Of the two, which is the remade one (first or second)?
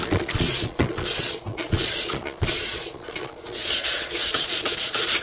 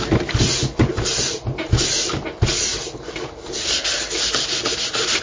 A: first